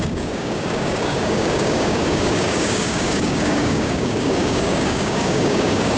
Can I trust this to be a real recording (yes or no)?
no